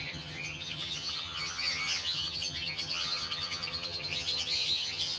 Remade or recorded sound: remade